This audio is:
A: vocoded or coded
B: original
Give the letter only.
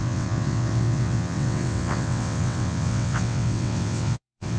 A